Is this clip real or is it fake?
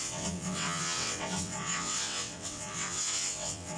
fake